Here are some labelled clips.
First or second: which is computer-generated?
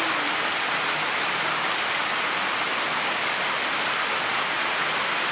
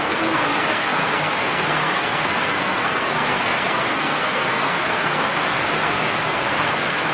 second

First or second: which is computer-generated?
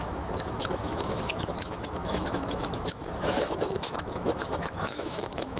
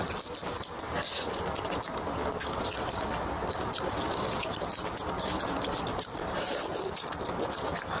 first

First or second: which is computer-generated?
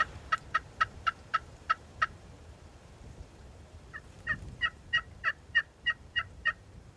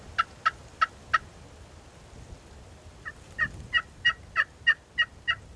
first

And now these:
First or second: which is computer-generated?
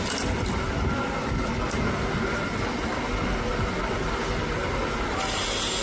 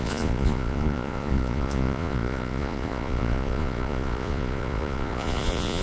second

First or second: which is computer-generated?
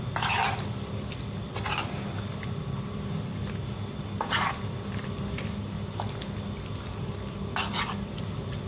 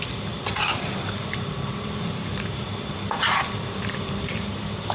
second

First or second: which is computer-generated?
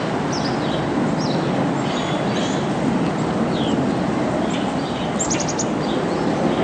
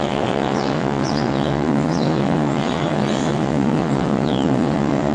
second